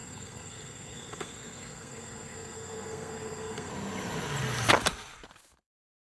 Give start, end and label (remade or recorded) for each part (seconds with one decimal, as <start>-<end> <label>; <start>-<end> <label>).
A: 0.0-3.7 remade; 3.7-6.1 recorded